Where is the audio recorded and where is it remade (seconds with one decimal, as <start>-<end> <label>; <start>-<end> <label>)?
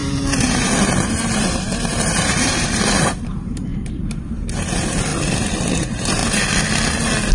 0.0-3.7 remade; 3.7-4.3 recorded; 4.3-5.1 remade; 5.1-5.7 recorded; 5.7-6.2 remade; 6.2-7.3 recorded